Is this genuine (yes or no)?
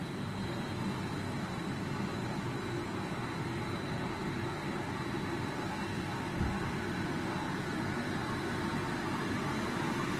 yes